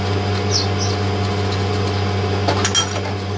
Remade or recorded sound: recorded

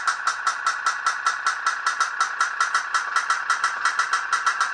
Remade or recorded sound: recorded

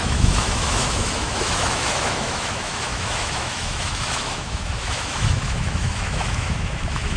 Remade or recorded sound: remade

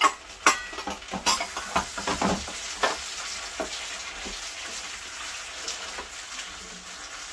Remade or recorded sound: recorded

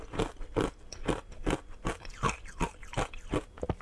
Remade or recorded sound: recorded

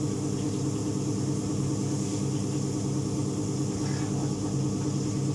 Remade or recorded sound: recorded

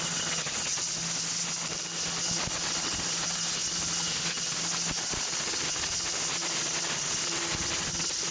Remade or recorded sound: recorded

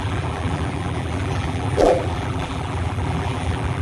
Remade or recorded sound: remade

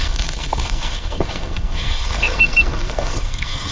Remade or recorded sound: remade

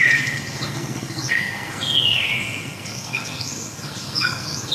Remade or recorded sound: remade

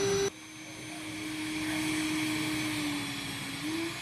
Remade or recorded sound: recorded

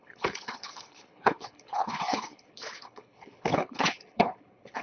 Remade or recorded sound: remade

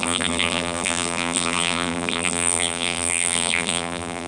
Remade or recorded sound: remade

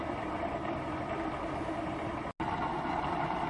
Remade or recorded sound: recorded